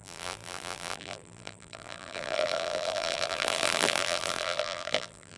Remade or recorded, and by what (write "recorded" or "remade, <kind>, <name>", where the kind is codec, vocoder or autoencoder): remade, vocoder, BigVGAN v2